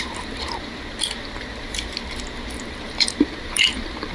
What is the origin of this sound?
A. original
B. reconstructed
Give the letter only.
B